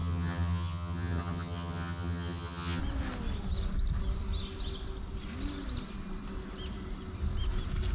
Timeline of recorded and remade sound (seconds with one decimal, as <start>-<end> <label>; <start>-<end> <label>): 0.0-2.8 remade; 2.8-7.9 recorded